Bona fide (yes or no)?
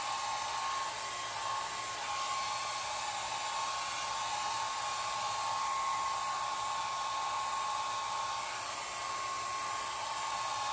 yes